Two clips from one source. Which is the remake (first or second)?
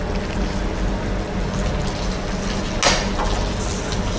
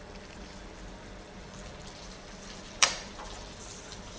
second